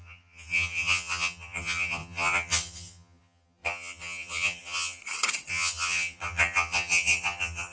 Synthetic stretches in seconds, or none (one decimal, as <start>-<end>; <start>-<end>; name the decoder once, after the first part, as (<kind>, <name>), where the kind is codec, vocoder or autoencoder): 0.0-5.0 (vocoder, HiFi-GAN); 5.5-7.7